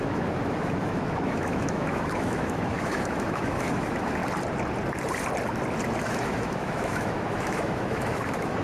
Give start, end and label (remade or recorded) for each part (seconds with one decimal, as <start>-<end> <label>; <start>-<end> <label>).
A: 0.0-4.2 remade; 4.2-6.0 recorded; 6.0-8.6 remade